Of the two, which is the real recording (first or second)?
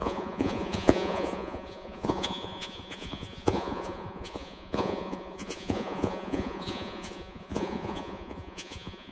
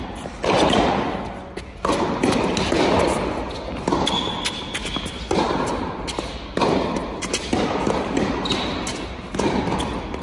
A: second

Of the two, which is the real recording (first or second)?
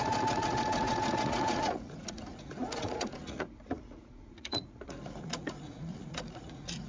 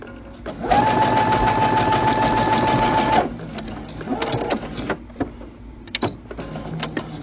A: second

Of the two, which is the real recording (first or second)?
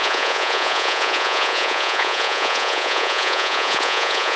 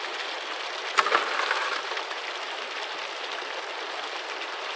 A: second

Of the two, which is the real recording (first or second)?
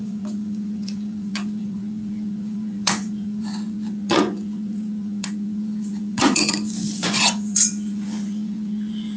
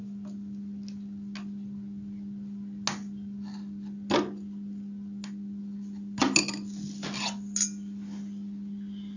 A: second